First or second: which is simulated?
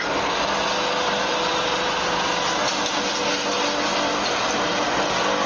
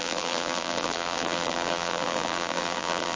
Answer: second